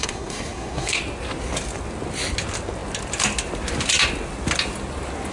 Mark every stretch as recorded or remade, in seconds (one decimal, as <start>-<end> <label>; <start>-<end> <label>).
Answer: 0.0-1.0 remade; 1.0-5.3 recorded